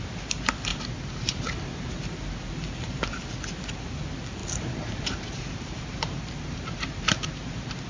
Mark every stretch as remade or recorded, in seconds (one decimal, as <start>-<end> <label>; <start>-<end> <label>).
0.0-0.7 recorded; 0.7-1.4 remade; 1.4-4.4 recorded; 4.4-7.9 remade